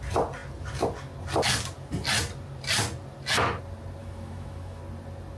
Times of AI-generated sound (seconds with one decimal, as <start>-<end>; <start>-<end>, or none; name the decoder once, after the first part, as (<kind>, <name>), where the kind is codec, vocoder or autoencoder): 4.0-4.8 (autoencoder, DAC-VAE)